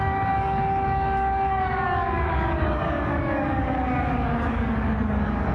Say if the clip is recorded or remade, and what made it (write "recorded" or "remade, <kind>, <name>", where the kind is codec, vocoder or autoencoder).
remade, codec, DAC